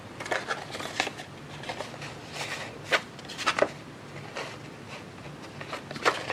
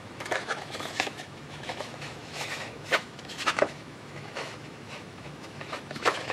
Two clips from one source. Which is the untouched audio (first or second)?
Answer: first